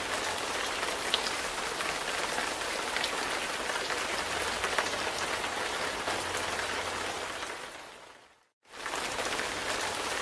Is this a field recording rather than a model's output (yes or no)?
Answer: yes